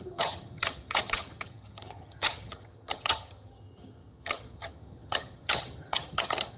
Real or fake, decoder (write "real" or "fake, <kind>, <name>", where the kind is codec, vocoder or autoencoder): fake, vocoder, HiFi-GAN